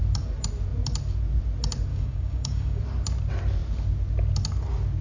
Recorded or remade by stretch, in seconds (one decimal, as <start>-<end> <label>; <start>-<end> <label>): 0.0-1.9 recorded; 1.9-2.8 remade; 2.8-5.0 recorded